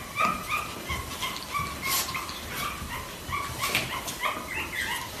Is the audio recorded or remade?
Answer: recorded